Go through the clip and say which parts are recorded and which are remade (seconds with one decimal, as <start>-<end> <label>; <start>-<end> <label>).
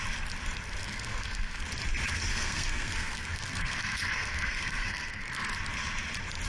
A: 0.0-0.8 recorded; 0.8-1.6 remade; 1.6-2.3 recorded; 2.3-5.5 remade; 5.5-6.5 recorded